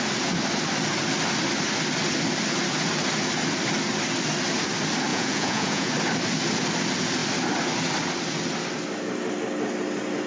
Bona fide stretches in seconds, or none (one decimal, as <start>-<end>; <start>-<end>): 0.0-5.1; 5.9-10.3